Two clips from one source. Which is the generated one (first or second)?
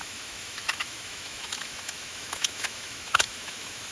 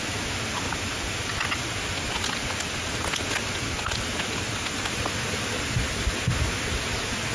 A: first